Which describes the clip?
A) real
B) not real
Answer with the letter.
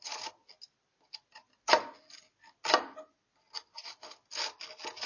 A